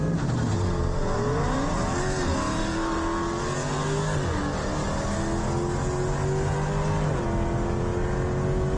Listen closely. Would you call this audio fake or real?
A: real